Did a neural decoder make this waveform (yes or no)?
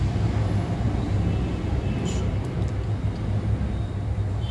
no